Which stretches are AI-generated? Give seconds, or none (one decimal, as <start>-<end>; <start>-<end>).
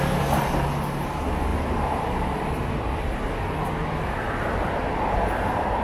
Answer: none